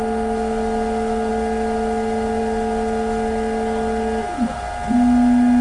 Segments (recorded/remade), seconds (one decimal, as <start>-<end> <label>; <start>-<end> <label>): 0.0-5.6 recorded